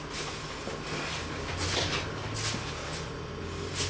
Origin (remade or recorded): recorded